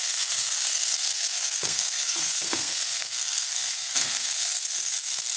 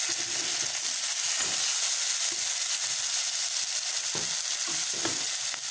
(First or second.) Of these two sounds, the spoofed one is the first